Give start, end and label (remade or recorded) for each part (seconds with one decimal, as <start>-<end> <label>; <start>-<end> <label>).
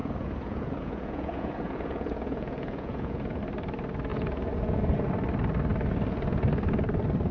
0.0-3.4 remade; 3.4-4.1 recorded; 4.1-5.1 remade; 5.1-7.3 recorded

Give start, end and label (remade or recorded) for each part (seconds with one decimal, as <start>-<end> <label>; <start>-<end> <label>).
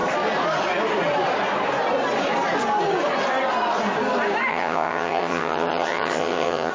0.0-4.5 recorded; 4.5-6.7 remade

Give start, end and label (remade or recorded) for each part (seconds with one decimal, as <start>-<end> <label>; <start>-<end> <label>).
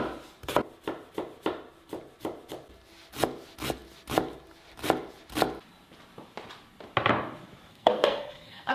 0.0-7.7 recorded; 7.7-8.7 remade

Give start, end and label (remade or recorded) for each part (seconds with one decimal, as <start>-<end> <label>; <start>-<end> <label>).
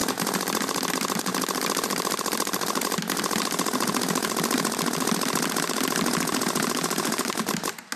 0.0-1.3 recorded; 1.3-5.6 remade; 5.6-8.0 recorded